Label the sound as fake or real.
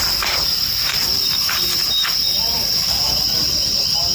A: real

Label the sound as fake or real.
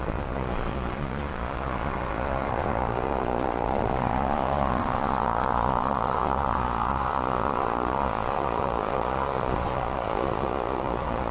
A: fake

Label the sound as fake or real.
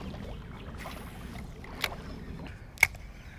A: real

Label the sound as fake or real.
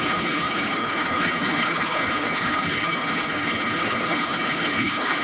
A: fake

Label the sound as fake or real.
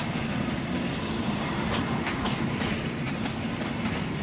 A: real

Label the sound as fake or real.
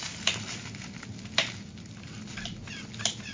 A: real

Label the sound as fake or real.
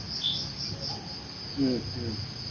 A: real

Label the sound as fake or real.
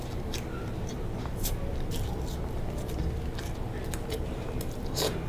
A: real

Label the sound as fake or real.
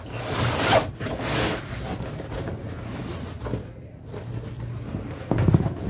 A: real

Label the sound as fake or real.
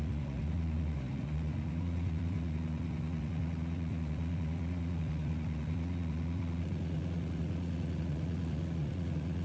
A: fake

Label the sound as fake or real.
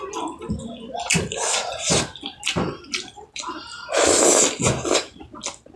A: real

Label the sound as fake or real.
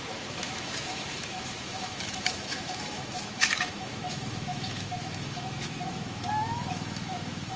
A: fake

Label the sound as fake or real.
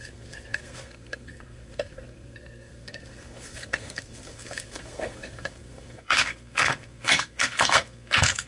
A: fake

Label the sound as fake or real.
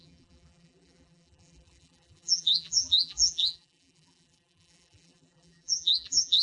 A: fake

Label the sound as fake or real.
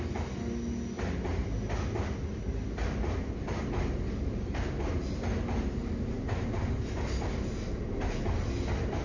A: real